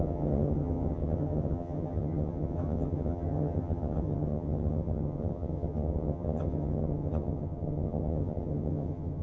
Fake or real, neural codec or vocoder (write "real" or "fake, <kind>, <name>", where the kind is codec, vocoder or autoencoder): fake, vocoder, HiFi-GAN